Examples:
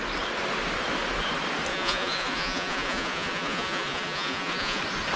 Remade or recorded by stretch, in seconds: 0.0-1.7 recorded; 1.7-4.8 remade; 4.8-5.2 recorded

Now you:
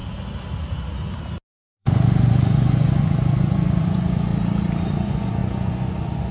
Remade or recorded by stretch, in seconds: 0.0-1.8 recorded; 1.8-4.3 remade; 4.3-5.0 recorded; 5.0-6.3 remade

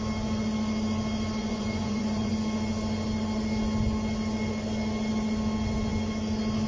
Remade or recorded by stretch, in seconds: 0.0-1.4 recorded; 1.4-2.3 remade; 2.3-6.7 recorded

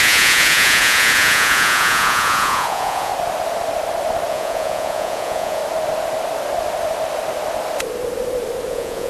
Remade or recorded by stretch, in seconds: 0.0-3.1 remade; 3.1-4.3 recorded; 4.3-5.6 remade; 5.6-8.7 recorded; 8.7-9.1 remade

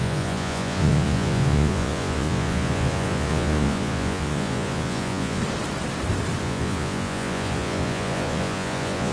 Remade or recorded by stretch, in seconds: 0.0-5.4 remade; 5.4-6.4 recorded; 6.4-9.1 remade

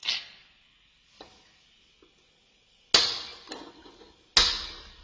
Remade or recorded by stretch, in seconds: 0.0-5.0 recorded